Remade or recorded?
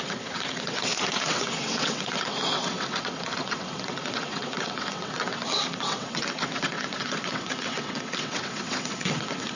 remade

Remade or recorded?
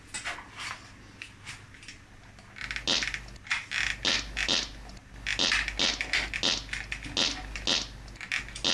recorded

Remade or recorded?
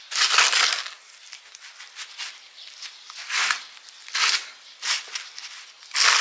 recorded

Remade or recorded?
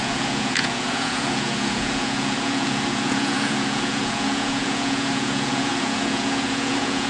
remade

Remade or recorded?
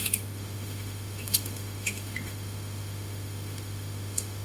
remade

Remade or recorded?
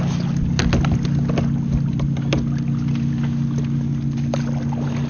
recorded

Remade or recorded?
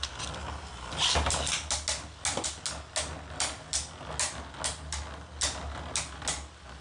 recorded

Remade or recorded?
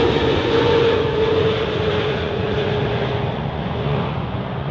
remade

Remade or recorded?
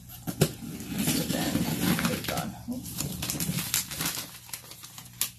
recorded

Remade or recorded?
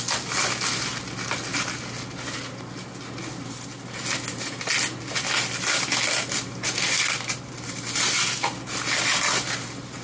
recorded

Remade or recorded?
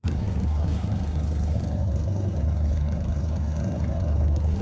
remade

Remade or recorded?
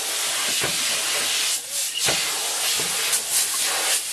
recorded